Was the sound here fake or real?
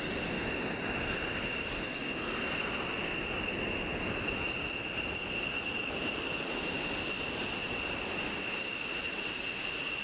real